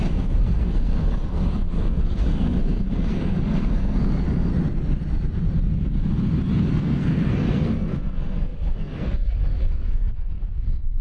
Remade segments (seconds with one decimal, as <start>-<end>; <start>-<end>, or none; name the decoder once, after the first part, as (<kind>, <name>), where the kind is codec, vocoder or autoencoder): 0.0-4.5 (codec, SNAC); 6.7-11.0